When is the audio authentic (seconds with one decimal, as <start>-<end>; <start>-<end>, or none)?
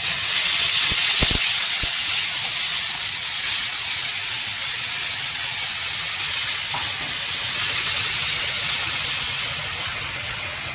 none